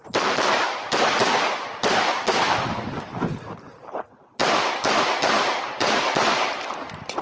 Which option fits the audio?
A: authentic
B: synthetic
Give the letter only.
A